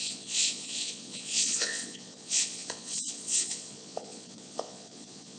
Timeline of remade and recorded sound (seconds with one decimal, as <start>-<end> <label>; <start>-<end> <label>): 0.0-5.4 remade

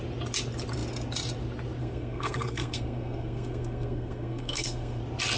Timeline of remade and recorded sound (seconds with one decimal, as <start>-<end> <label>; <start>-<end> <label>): 0.0-1.8 recorded; 1.8-5.0 remade; 5.0-5.4 recorded